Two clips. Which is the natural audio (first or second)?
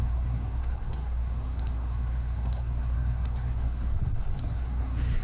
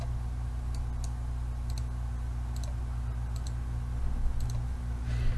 second